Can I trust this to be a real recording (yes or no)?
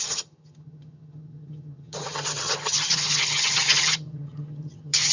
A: no